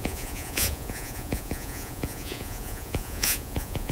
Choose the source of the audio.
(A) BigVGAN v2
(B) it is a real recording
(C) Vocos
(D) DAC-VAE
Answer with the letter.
C